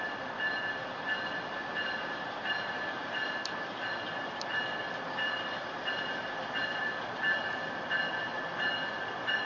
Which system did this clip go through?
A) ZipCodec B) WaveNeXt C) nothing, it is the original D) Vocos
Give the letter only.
C